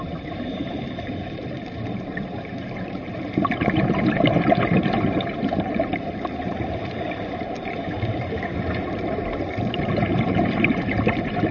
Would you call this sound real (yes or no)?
no